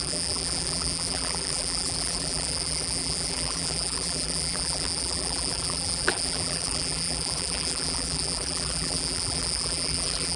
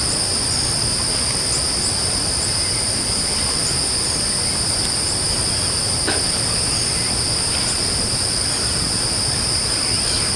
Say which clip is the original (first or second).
second